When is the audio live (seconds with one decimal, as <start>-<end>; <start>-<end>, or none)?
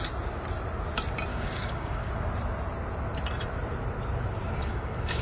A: 0.0-1.3; 2.1-4.6